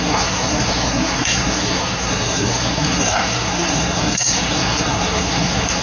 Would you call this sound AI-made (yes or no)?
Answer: yes